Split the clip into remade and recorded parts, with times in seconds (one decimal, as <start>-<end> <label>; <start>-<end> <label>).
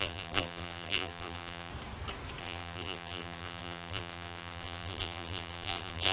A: 0.0-1.7 remade; 1.7-2.4 recorded; 2.4-6.1 remade